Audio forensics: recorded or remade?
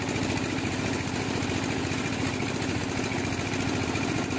recorded